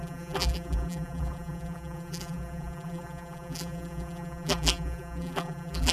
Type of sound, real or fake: fake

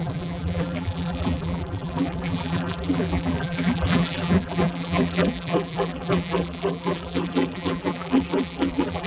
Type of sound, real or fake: fake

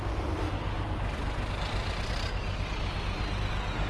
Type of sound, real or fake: real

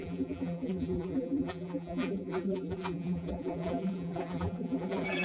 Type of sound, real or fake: fake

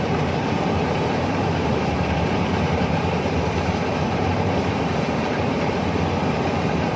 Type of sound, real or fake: fake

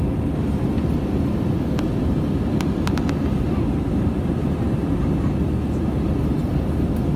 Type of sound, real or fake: real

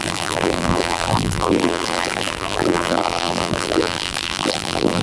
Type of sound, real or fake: fake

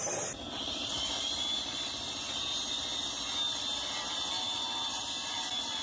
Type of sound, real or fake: fake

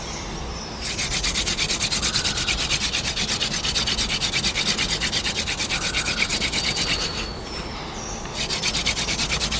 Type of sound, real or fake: real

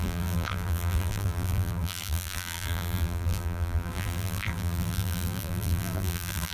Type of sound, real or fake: fake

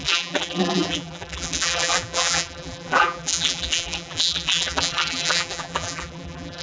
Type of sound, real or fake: fake